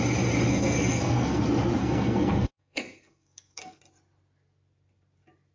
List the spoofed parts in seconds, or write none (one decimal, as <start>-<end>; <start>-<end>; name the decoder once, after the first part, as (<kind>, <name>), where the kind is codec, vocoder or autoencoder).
0.5-1.4 (codec, SNAC); 1.8-3.8